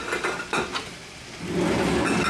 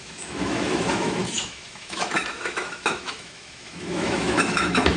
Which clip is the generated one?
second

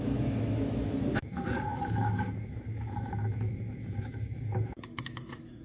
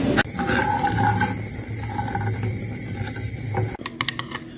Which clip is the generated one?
first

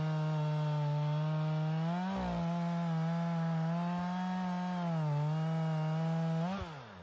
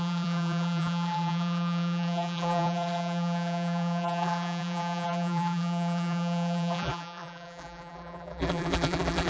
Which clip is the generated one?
second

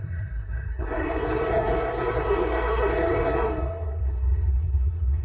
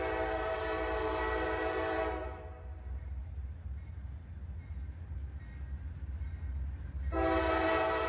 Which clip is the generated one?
first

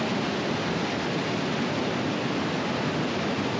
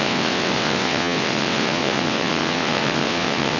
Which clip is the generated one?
second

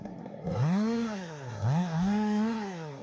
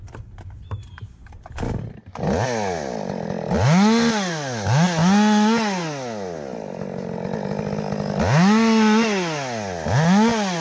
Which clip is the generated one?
first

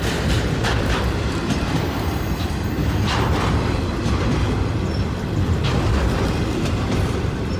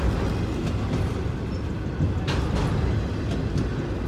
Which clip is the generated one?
first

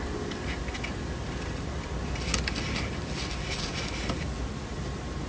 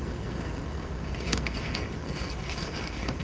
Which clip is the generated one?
second